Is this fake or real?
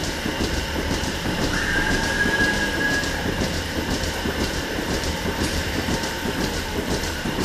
fake